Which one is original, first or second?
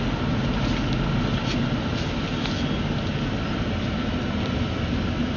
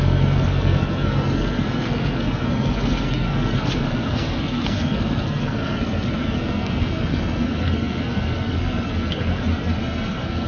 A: first